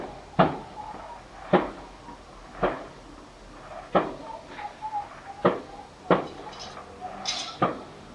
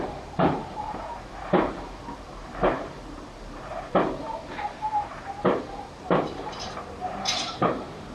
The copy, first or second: second